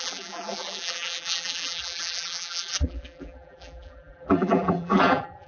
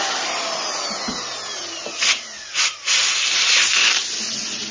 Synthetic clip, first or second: first